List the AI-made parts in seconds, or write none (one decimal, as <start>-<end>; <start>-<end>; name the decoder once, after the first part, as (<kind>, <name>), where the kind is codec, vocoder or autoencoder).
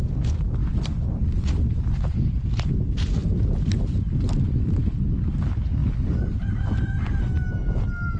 3.2-3.8 (vocoder, BigVGAN v2); 5.8-6.9